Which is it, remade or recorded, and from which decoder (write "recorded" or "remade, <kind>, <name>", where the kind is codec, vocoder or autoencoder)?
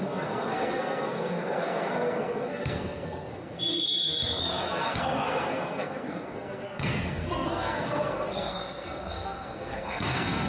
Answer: remade, codec, SNAC